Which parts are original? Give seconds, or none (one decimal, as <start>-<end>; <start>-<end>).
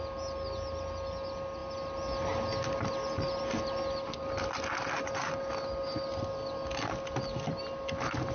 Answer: 0.0-8.3